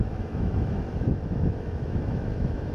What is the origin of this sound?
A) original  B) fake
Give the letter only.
B